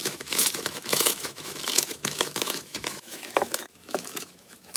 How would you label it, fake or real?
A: fake